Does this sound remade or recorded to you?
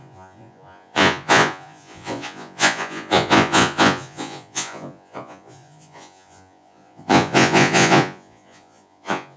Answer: remade